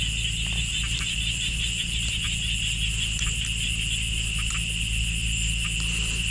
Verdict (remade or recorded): recorded